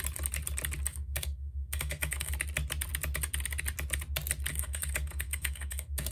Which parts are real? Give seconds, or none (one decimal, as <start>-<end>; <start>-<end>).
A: 0.0-0.9; 2.3-4.5